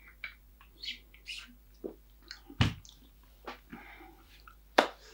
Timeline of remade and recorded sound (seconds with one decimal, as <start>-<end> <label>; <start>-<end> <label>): 0.0-3.7 recorded; 3.7-5.1 remade